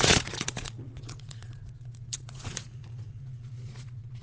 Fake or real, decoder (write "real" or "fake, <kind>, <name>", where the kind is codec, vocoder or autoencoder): fake, vocoder, Vocos